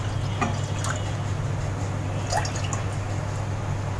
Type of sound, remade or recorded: recorded